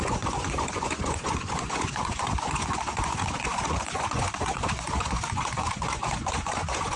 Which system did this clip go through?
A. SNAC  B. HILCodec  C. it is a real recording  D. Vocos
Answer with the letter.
D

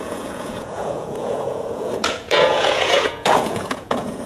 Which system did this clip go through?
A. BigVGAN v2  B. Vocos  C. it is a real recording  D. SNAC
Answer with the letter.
B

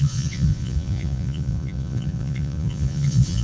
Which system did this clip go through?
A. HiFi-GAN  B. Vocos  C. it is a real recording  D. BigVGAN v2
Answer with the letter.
B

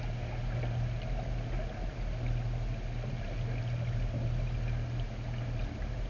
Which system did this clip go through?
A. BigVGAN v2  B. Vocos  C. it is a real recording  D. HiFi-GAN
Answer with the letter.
C